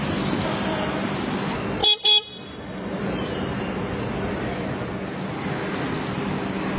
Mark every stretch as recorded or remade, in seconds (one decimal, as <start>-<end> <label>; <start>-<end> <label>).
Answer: 0.0-6.8 recorded